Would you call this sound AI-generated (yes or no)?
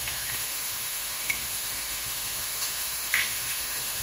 yes